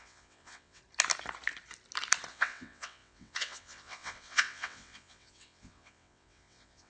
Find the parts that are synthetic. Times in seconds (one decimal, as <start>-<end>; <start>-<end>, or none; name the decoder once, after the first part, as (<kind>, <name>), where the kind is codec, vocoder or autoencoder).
0.0-0.8 (vocoder, WaveNeXt); 2.3-6.9